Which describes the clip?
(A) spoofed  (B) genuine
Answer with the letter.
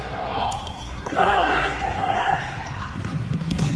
A